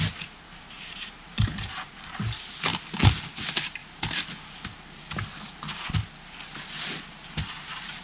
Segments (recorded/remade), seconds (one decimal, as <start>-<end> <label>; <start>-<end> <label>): 0.0-2.7 remade; 2.7-3.3 recorded; 3.3-3.8 remade; 3.8-7.5 recorded; 7.5-8.0 remade